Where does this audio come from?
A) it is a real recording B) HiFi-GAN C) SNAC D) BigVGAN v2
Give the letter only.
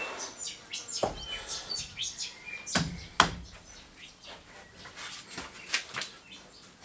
A